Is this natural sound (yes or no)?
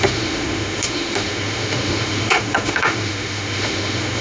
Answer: no